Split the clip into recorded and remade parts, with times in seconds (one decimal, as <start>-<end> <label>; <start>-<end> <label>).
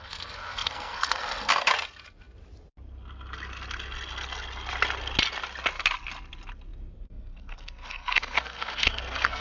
0.0-1.7 remade; 1.7-6.9 recorded; 6.9-9.4 remade